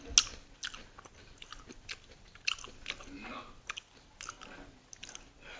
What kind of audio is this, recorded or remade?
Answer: recorded